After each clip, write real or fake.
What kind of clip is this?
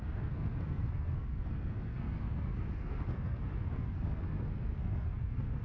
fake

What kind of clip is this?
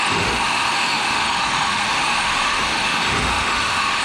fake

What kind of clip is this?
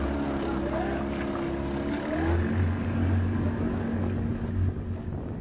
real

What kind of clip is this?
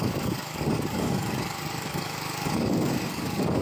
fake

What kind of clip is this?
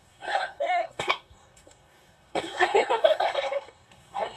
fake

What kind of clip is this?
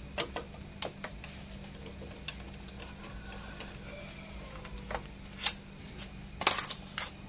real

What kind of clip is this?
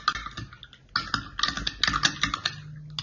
real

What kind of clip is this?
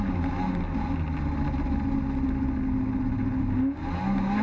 real